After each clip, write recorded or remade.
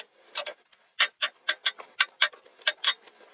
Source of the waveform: recorded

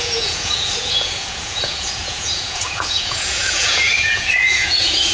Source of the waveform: remade